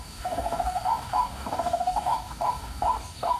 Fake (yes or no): yes